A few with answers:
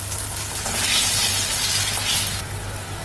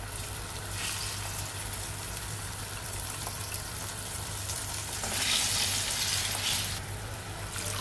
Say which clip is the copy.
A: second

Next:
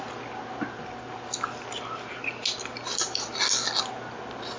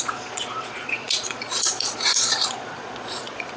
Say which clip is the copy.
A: second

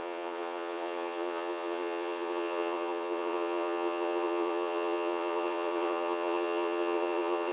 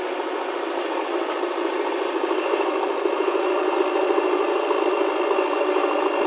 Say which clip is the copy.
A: first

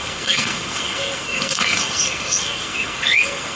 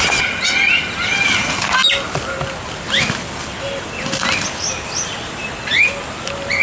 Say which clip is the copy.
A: first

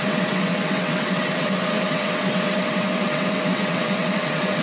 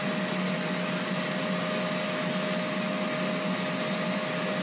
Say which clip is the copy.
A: first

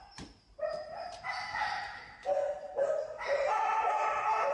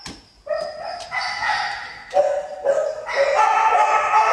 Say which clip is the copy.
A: first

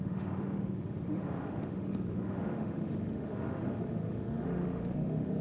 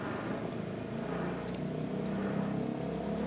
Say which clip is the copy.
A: first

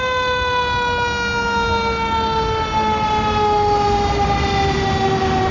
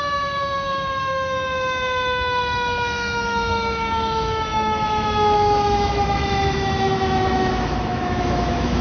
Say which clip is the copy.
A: second